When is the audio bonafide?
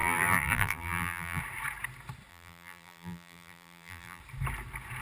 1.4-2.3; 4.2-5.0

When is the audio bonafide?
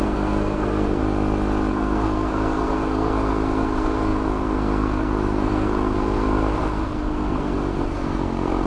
1.0-1.7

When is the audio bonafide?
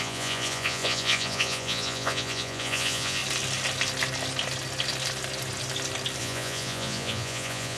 3.2-6.2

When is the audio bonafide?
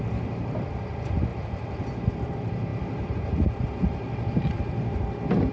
0.0-1.3; 2.3-5.5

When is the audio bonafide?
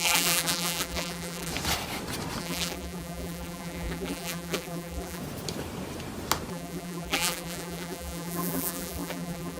1.5-2.4; 5.2-6.5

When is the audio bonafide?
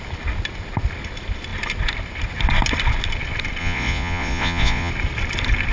0.0-3.6; 4.9-5.7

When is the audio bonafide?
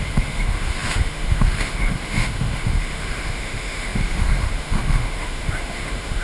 none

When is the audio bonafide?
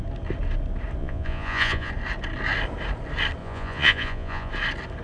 0.0-1.0; 1.9-3.4; 4.5-5.0